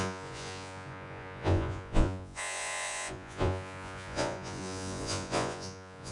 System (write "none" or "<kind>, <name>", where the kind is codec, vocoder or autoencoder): vocoder, Vocos